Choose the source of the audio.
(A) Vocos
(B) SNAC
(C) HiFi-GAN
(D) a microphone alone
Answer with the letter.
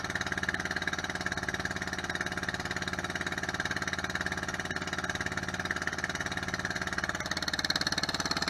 D